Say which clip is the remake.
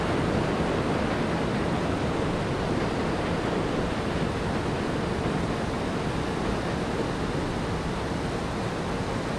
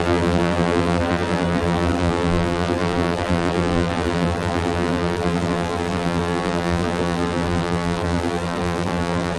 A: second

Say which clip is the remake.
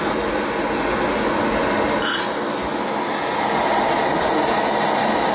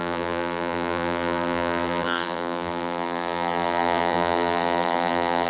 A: second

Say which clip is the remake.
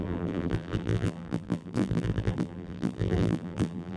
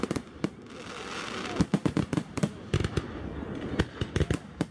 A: first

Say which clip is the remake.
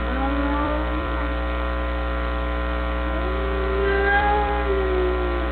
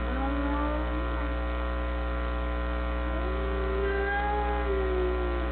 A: first